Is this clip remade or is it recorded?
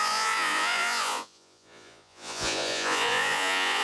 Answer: remade